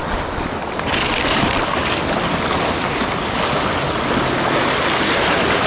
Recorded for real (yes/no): yes